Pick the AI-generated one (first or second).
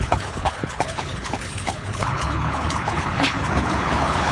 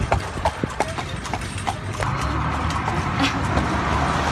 first